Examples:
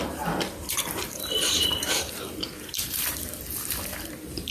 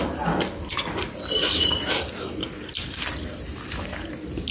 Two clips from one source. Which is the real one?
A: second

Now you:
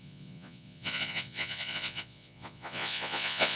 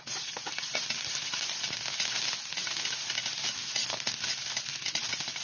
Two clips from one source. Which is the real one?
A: second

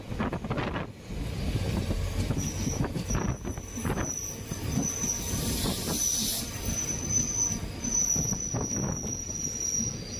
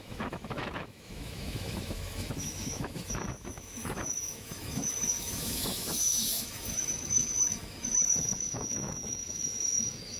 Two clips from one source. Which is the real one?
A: first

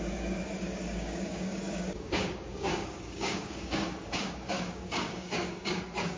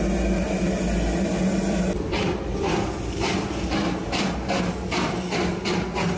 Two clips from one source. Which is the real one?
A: second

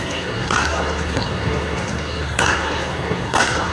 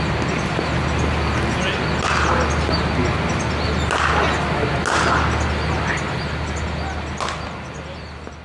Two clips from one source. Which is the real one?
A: second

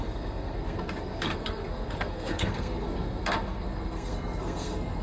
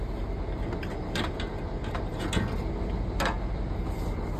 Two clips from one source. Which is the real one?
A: second